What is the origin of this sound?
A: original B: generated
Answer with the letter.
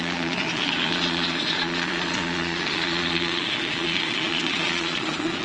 B